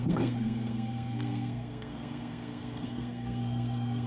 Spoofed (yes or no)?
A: yes